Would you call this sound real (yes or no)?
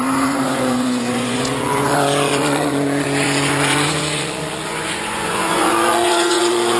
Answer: no